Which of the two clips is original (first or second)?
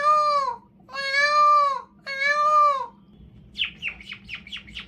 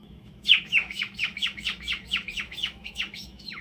first